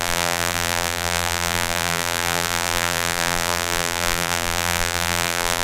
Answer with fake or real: fake